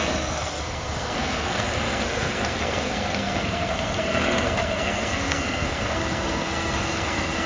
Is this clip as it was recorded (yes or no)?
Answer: no